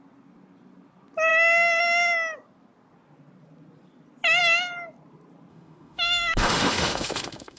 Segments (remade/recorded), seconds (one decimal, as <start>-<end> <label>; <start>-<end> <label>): 0.0-5.5 recorded; 5.5-7.6 remade